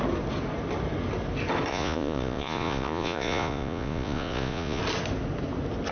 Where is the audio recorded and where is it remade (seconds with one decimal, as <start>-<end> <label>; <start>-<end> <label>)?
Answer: 0.0-1.7 recorded; 1.7-4.8 remade; 4.8-5.9 recorded